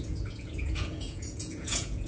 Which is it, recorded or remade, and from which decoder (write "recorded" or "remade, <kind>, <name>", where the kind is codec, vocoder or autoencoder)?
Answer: remade, vocoder, Vocos